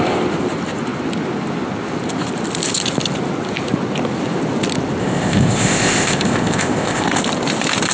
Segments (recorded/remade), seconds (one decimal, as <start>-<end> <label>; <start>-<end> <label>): 0.0-5.0 recorded; 5.0-7.2 remade; 7.2-7.9 recorded